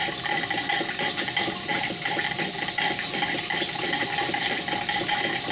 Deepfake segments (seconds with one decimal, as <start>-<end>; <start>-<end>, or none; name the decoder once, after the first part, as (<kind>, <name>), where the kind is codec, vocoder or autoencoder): none